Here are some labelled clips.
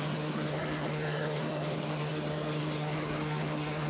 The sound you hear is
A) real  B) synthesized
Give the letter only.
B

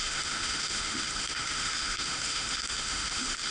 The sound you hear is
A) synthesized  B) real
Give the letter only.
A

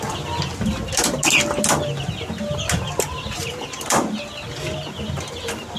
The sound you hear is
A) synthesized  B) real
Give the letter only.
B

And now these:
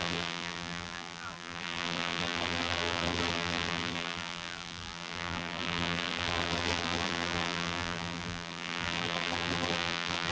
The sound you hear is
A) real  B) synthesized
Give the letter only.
B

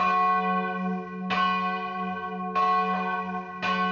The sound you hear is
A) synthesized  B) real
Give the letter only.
B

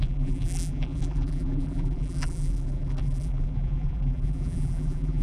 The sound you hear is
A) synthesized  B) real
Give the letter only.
A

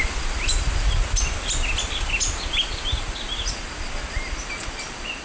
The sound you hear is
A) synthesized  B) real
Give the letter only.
B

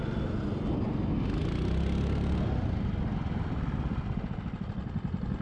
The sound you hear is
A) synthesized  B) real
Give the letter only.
B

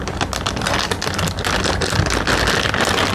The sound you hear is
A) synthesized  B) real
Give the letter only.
B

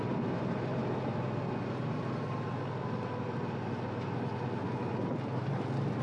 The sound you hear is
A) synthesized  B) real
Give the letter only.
B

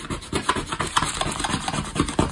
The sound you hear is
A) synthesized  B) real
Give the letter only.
B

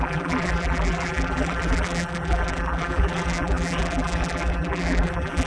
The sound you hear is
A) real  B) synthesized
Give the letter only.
B